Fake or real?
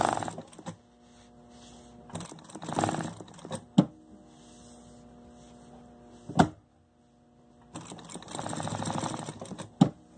real